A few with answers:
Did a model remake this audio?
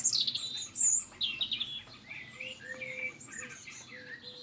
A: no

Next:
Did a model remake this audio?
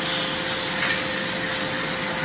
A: no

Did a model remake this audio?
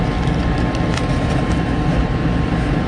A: no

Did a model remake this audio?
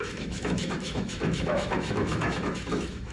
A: yes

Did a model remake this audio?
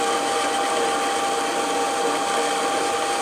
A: no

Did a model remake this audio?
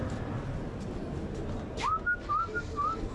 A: no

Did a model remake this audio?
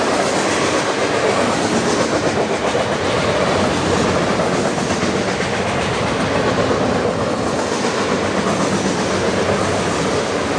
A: no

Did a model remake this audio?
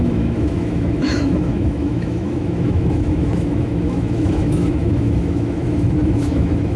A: yes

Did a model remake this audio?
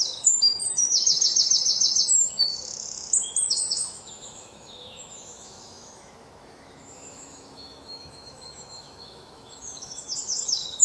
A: yes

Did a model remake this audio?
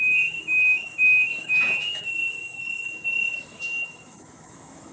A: yes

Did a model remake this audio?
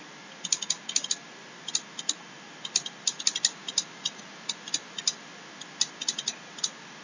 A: no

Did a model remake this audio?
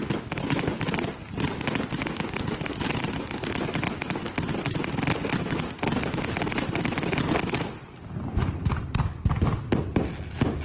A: no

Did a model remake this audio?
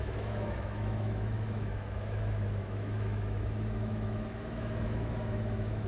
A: yes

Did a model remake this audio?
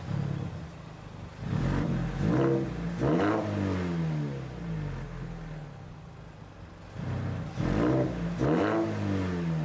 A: no